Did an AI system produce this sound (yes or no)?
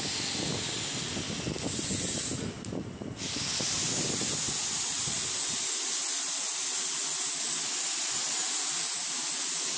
no